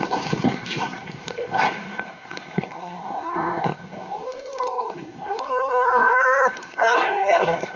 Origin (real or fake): fake